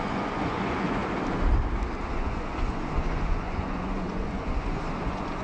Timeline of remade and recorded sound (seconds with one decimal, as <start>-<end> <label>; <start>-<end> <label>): 0.0-1.0 remade; 1.0-2.1 recorded; 2.1-5.4 remade